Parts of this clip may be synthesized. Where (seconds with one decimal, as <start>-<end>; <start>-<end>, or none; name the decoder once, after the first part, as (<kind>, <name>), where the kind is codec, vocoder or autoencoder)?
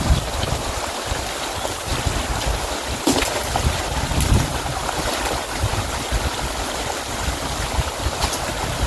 none